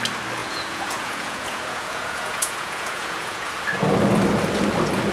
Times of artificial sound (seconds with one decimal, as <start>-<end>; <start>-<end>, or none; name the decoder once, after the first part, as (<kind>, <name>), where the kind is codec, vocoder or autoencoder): 0.4-3.5 (vocoder, Vocos)